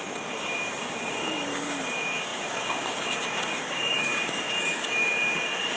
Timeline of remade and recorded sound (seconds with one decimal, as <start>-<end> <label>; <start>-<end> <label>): 0.0-5.8 remade